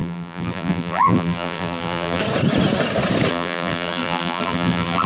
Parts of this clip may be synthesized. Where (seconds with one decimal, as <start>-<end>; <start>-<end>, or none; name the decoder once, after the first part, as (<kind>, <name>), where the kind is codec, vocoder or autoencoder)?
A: 0.0-2.2 (vocoder, BigVGAN v2); 3.3-5.1